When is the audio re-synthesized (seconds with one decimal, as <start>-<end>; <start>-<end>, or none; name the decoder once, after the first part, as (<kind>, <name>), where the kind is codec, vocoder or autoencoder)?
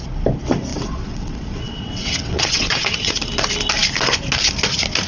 0.7-3.1 (vocoder, WaveNeXt)